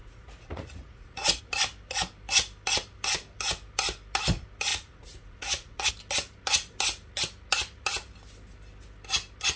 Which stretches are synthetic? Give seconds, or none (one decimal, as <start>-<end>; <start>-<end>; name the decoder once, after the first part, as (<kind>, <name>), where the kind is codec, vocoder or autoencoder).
0.0-1.4 (vocoder, Vocos); 4.7-5.9